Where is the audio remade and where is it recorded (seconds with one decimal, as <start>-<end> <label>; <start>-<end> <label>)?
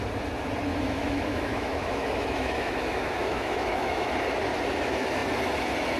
0.0-0.7 recorded; 0.7-4.1 remade; 4.1-6.0 recorded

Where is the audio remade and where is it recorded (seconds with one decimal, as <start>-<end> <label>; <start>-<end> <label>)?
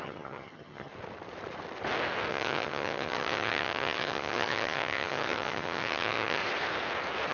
0.0-0.9 remade; 0.9-2.3 recorded; 2.3-6.4 remade; 6.4-7.3 recorded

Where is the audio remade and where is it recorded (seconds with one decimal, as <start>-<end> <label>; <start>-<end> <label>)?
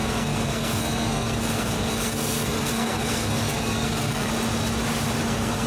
0.0-4.3 remade; 4.3-5.2 recorded; 5.2-5.7 remade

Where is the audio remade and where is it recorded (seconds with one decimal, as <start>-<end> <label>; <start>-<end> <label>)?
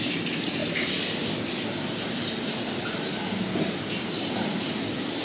0.0-5.2 recorded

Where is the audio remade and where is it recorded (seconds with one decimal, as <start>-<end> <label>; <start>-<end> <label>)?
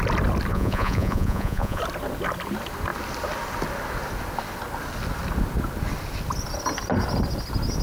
0.0-0.5 recorded; 0.5-1.8 remade; 1.8-7.8 recorded